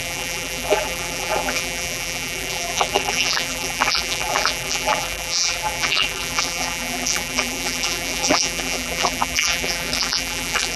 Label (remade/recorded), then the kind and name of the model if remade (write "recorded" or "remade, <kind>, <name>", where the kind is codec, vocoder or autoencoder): remade, vocoder, BigVGAN v2